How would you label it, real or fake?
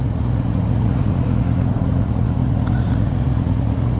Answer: fake